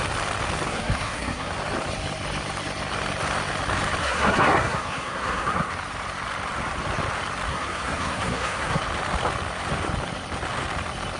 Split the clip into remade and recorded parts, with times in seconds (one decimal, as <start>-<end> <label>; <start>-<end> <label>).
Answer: 0.0-0.7 recorded; 0.7-1.5 remade; 1.5-4.0 recorded; 4.0-5.7 remade; 5.7-7.5 recorded; 7.5-8.8 remade; 8.8-11.2 recorded